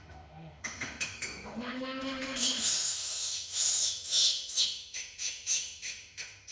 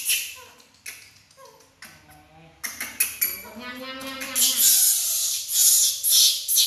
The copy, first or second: first